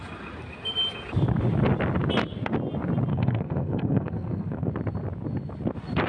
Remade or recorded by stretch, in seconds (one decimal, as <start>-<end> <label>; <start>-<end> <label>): 0.0-3.1 recorded; 3.1-4.7 remade; 4.7-6.1 recorded